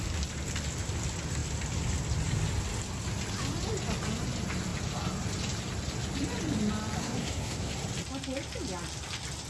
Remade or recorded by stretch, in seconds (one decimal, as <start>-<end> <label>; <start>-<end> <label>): 0.0-7.0 recorded; 7.0-7.7 remade; 7.7-9.5 recorded